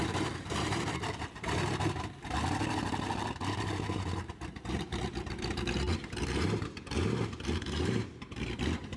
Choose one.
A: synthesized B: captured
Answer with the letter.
A